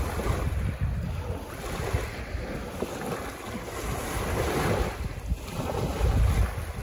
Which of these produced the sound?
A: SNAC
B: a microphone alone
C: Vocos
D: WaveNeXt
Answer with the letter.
B